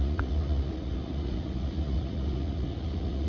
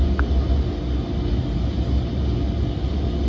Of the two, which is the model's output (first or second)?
first